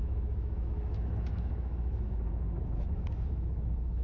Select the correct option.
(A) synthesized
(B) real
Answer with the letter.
A